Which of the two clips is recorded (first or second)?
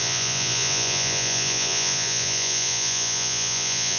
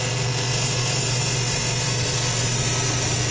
second